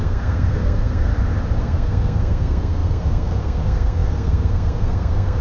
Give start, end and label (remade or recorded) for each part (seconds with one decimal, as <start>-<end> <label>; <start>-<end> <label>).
0.0-1.1 remade; 1.1-1.6 recorded; 1.6-5.4 remade